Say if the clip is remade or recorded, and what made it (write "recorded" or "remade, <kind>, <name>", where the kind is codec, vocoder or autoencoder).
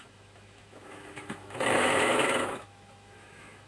remade, autoencoder, DAC-VAE